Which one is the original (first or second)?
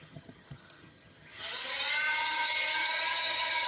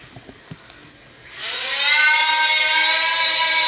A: second